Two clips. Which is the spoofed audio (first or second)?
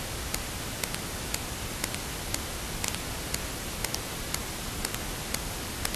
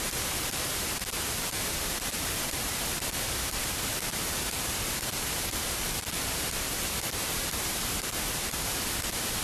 second